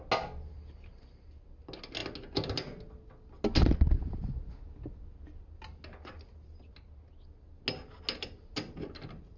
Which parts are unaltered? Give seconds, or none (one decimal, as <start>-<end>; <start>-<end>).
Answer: 0.0-9.4